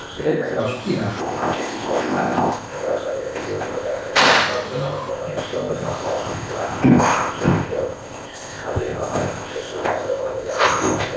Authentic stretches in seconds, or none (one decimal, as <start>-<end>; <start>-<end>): 0.6-1.2; 4.2-5.1